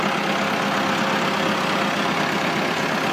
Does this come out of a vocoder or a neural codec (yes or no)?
no